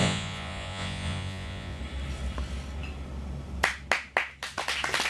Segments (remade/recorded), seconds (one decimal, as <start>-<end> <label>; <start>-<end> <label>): 0.0-1.8 remade; 1.8-5.1 recorded